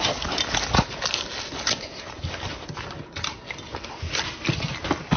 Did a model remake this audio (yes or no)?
no